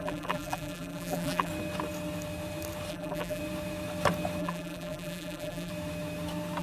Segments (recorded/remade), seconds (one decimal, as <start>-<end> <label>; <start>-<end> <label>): 0.0-1.5 remade; 1.5-2.9 recorded; 2.9-3.4 remade; 3.4-4.4 recorded; 4.4-5.7 remade; 5.7-6.6 recorded